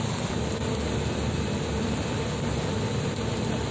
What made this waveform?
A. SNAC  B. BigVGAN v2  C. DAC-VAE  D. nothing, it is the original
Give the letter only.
D